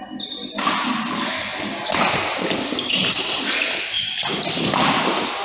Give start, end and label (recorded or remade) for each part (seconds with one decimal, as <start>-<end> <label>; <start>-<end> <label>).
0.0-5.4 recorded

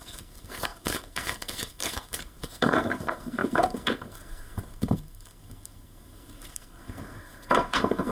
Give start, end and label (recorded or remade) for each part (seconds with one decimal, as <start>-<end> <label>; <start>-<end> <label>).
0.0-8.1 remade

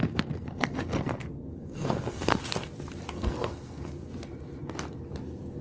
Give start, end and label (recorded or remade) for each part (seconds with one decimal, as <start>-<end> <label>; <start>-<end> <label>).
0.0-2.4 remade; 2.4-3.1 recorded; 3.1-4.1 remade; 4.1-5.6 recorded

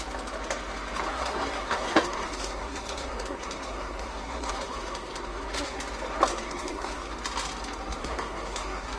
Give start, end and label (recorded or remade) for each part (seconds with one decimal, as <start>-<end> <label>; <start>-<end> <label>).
0.0-1.1 recorded; 1.1-5.8 remade; 5.8-6.3 recorded; 6.3-7.1 remade; 7.1-8.0 recorded; 8.0-9.0 remade

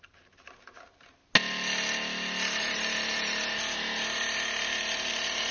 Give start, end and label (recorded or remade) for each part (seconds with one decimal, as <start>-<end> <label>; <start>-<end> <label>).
0.0-1.2 remade; 1.2-2.6 recorded; 2.6-5.5 remade

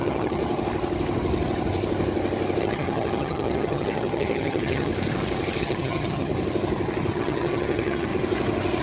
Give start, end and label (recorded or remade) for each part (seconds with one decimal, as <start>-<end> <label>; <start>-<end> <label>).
0.0-0.4 remade; 0.4-2.6 recorded; 2.6-4.9 remade; 4.9-5.6 recorded; 5.6-6.3 remade; 6.3-7.1 recorded; 7.1-8.1 remade; 8.1-8.8 recorded

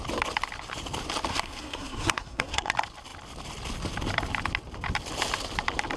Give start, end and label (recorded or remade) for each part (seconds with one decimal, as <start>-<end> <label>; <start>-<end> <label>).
0.0-1.3 recorded; 1.3-2.7 remade; 2.7-6.0 recorded

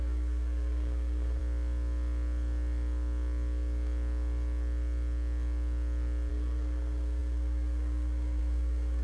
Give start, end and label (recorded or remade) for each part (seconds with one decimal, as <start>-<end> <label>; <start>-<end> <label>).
0.0-1.4 remade; 1.4-6.3 recorded; 6.3-9.0 remade